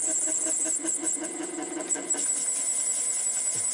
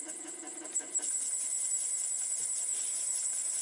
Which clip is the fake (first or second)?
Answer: second